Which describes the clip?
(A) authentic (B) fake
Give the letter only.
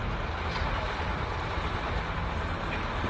A